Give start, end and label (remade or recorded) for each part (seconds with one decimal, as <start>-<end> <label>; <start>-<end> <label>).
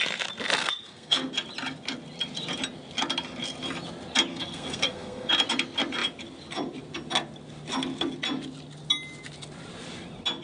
0.0-0.6 recorded; 0.6-1.3 remade; 1.3-4.3 recorded; 4.3-5.3 remade; 5.3-10.4 recorded